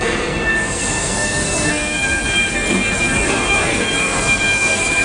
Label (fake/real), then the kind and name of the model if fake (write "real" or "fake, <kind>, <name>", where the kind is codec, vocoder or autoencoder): fake, codec, SNAC